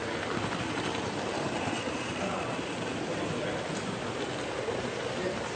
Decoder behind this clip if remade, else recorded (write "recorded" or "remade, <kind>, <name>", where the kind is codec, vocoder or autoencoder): recorded